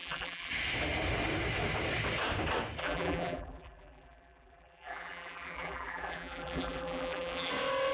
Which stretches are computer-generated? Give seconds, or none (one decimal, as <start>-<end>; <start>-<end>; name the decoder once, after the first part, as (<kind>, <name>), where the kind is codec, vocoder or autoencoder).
0.0-0.5 (vocoder, BigVGAN v2); 2.8-7.5